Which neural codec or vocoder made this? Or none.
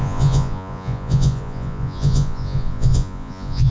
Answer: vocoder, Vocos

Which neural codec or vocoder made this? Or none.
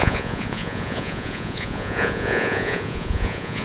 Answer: vocoder, Vocos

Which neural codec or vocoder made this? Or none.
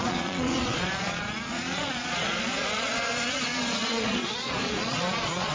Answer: vocoder, Vocos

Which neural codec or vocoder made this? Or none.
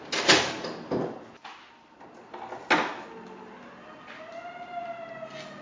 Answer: none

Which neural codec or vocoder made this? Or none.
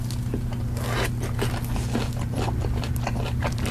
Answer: none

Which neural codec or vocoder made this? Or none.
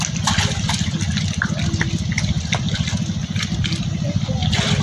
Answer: none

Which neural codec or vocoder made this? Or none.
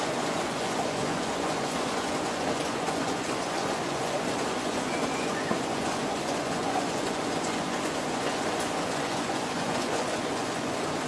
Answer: vocoder, Vocos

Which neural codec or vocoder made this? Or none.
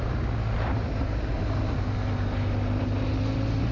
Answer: none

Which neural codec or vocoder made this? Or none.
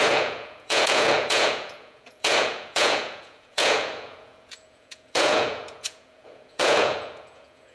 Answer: vocoder, Vocos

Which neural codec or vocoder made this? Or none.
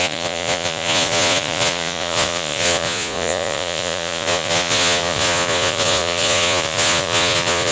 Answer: vocoder, Vocos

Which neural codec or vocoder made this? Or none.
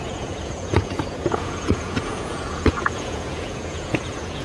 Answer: vocoder, Vocos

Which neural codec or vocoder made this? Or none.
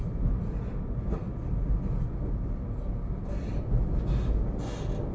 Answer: none